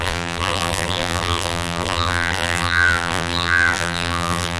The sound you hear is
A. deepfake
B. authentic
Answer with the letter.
A